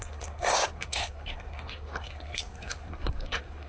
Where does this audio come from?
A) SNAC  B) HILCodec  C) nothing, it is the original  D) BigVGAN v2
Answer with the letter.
A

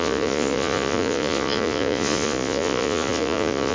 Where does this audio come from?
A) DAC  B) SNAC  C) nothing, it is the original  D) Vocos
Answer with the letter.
D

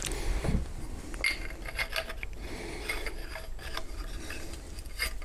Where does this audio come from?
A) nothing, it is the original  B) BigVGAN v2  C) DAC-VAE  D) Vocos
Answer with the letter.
A